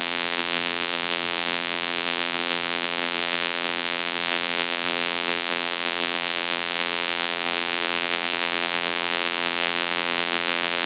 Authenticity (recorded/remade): remade